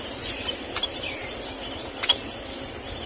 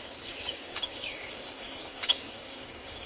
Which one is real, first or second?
first